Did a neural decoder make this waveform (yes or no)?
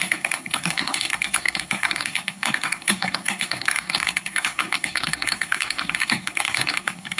yes